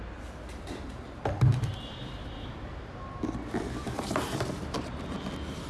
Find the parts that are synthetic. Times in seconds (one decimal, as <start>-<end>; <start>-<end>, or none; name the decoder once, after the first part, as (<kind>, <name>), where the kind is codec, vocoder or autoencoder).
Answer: 1.5-4.5 (vocoder, BigVGAN v2)